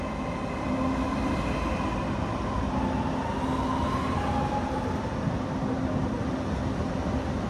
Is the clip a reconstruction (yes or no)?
no